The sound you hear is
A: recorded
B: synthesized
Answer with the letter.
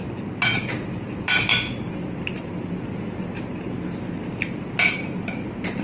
A